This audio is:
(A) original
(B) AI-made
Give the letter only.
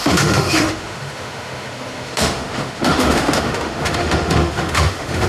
B